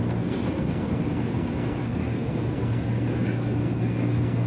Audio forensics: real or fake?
fake